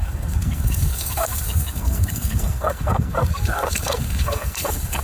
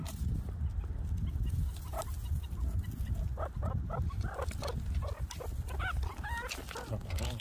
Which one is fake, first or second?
first